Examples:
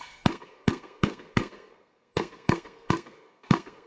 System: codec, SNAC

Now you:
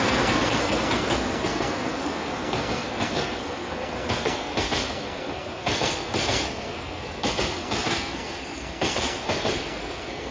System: codec, SNAC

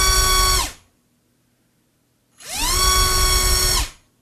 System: none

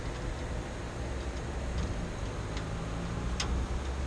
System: none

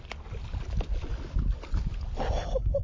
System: none